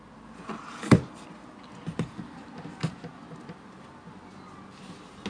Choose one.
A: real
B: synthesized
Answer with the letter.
A